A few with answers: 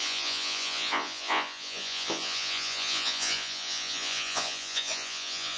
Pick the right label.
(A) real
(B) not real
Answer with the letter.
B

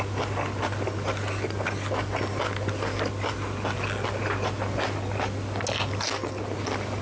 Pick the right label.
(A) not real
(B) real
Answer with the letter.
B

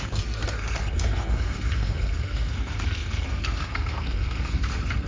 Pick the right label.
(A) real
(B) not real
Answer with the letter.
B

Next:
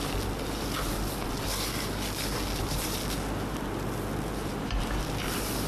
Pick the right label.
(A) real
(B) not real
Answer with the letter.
A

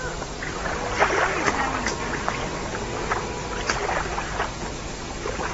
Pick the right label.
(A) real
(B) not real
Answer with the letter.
A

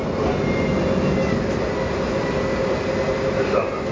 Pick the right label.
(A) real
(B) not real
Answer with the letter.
A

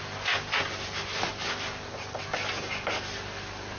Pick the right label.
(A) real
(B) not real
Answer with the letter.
A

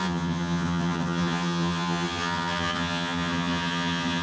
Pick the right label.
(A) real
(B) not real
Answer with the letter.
B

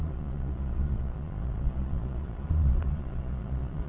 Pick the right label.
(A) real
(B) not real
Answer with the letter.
B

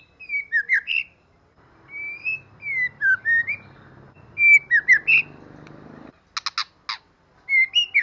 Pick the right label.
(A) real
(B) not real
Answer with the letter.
A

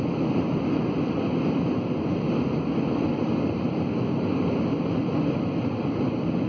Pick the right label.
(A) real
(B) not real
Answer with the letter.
A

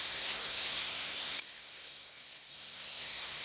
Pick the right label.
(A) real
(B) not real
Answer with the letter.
B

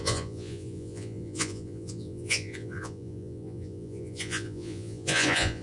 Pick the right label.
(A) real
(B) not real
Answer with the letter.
B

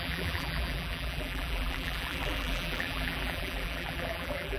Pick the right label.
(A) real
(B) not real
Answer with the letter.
B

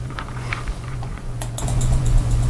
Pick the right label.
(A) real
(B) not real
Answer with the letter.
B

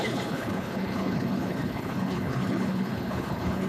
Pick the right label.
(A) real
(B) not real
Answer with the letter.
B